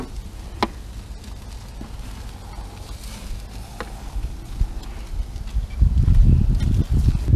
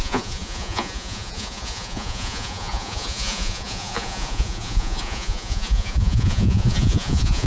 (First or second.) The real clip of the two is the first